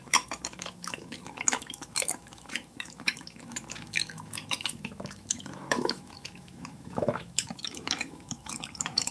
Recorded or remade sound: remade